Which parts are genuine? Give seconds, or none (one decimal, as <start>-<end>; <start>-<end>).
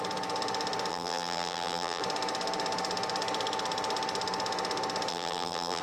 0.0-0.9; 2.0-5.1